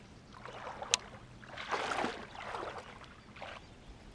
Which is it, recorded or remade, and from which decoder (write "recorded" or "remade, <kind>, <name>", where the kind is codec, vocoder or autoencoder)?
recorded